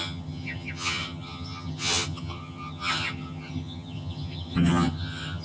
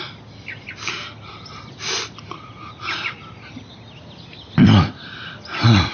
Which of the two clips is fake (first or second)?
first